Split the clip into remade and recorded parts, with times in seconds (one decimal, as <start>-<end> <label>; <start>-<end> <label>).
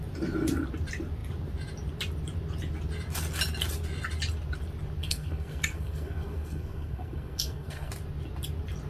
0.0-5.0 recorded; 5.0-7.9 remade; 7.9-8.9 recorded